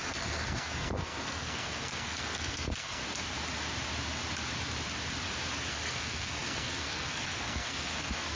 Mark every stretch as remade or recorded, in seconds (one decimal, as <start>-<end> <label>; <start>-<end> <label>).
0.0-3.0 remade; 3.0-5.7 recorded; 5.7-8.4 remade